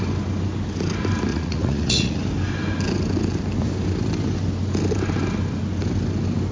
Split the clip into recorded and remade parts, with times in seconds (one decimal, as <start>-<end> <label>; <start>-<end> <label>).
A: 0.0-1.3 recorded; 1.3-2.2 remade; 2.2-6.5 recorded